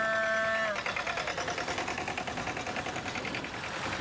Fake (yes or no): no